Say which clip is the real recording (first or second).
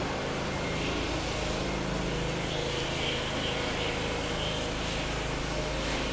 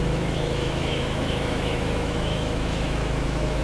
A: first